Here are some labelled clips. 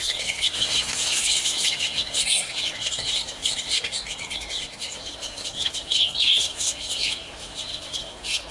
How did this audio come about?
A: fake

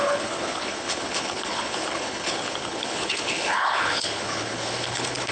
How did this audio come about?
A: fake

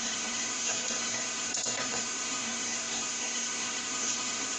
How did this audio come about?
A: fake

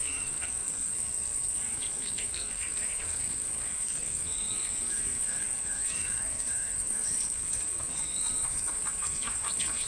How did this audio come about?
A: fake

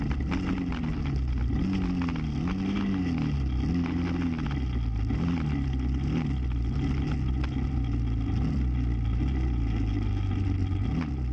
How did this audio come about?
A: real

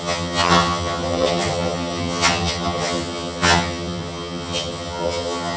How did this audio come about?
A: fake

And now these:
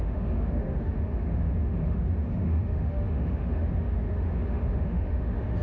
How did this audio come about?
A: fake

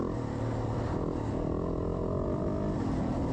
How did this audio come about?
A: real